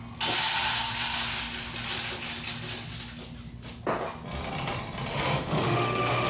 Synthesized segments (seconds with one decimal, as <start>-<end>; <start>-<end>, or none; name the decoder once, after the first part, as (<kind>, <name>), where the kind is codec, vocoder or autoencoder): 5.1-6.3 (autoencoder, DAC-VAE)